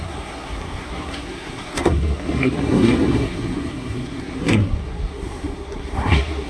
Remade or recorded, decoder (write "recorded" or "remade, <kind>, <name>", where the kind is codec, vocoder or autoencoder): remade, codec, SNAC